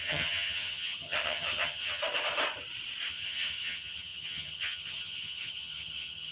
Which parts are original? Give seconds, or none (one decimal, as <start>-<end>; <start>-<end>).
2.0-3.1